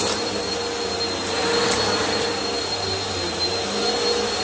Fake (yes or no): no